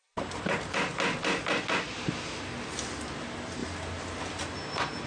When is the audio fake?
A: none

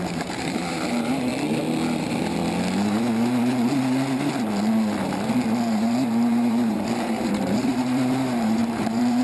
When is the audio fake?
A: 0.0-1.3; 2.0-2.4; 5.7-9.2